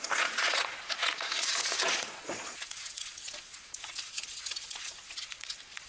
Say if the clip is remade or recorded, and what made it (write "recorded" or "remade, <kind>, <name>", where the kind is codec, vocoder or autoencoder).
remade, vocoder, Vocos